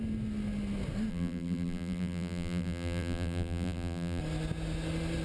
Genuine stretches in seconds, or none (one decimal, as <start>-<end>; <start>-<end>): 0.0-1.1; 4.2-5.2